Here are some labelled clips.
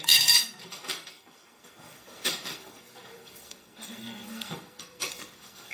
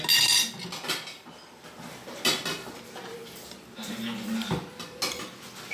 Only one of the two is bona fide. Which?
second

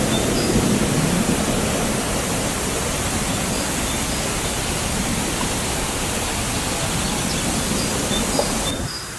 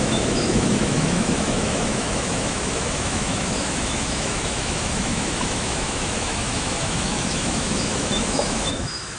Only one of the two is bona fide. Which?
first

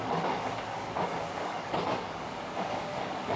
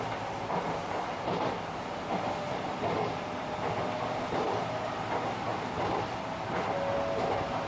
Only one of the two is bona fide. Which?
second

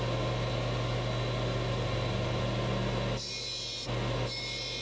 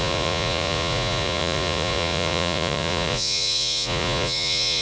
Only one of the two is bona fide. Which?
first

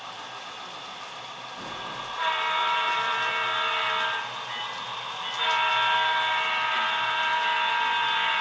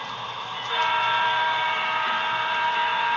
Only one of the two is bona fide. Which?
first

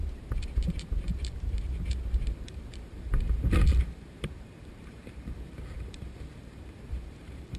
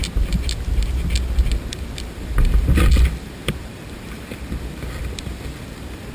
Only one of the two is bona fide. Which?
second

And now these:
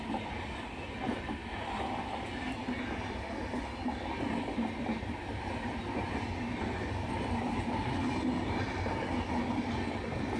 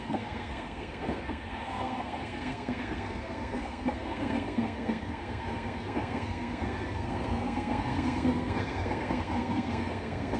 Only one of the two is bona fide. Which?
first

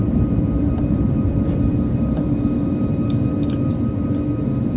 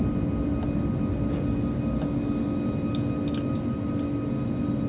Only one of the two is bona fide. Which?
second